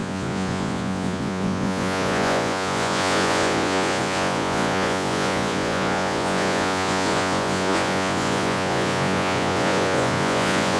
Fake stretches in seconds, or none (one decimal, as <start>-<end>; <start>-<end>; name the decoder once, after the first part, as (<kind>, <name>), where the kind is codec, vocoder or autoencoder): 0.0-10.8 (vocoder, Vocos)